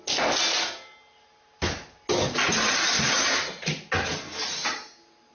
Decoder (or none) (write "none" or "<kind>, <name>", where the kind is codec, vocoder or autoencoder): none